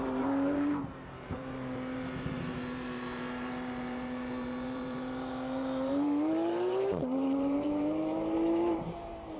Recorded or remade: remade